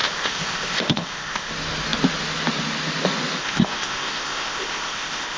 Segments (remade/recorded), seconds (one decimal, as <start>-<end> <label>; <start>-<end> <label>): 0.0-1.5 remade; 1.5-3.4 recorded; 3.4-5.4 remade